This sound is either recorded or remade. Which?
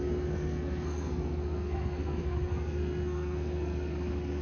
remade